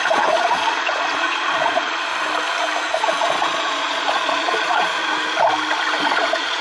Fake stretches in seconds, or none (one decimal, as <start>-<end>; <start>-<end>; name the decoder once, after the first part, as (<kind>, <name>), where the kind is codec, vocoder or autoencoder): 0.0-2.1 (vocoder, Vocos); 2.8-5.0; 6.0-6.6